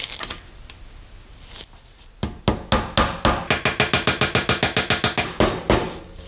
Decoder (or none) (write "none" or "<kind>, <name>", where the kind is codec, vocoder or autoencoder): none